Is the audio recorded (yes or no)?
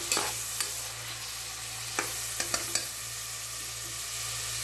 yes